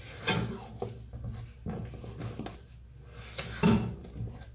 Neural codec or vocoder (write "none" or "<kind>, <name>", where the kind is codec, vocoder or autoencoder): none